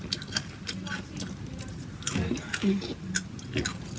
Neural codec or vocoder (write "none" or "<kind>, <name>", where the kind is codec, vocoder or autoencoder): none